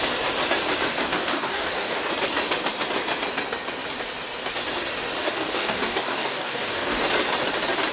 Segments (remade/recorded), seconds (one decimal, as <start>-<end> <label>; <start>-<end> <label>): 0.0-0.9 recorded; 0.9-2.1 remade; 2.1-5.2 recorded; 5.2-7.0 remade; 7.0-7.9 recorded